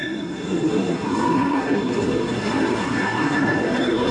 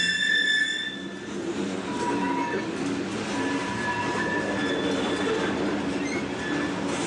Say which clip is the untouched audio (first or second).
second